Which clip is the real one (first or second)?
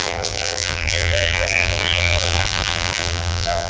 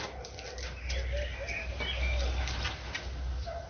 second